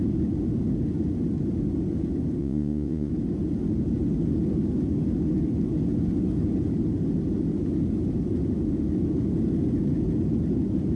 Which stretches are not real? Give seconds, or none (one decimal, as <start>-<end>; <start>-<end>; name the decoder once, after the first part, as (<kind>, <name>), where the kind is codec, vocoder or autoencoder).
2.4-3.1 (vocoder, Vocos)